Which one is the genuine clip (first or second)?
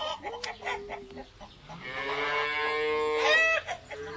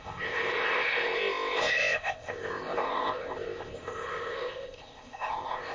first